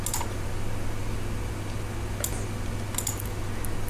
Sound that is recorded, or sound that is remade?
recorded